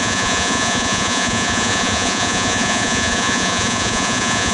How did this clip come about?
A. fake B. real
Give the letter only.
A